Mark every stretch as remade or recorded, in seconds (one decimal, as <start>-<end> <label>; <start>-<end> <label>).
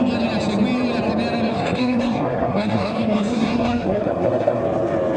0.0-1.5 recorded; 1.5-4.6 remade; 4.6-5.2 recorded